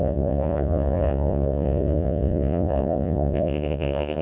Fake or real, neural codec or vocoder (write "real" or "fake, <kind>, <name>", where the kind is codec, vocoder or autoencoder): fake, vocoder, Vocos